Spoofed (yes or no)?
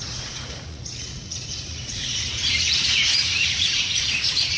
yes